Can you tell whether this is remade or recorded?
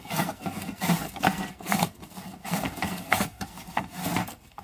remade